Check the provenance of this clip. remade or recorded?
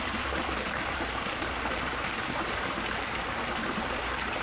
remade